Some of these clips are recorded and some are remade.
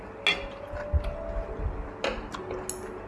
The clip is recorded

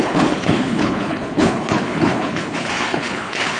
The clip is remade